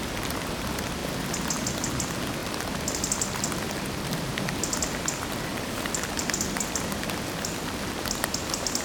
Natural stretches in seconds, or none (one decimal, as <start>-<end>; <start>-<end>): 0.0-8.8